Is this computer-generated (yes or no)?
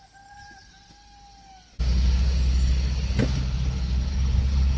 no